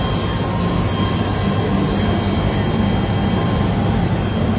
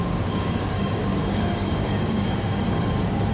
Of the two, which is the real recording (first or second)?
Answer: first